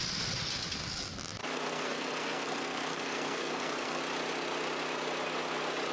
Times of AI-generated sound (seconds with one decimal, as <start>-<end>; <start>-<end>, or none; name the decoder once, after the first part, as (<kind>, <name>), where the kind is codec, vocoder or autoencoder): 1.4-4.0 (codec, SNAC)